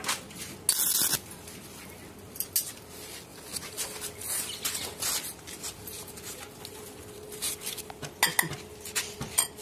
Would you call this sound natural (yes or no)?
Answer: yes